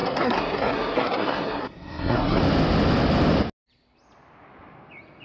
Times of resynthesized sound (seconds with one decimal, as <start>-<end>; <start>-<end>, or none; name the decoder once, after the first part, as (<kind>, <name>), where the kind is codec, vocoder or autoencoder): 0.0-2.4 (codec, SNAC)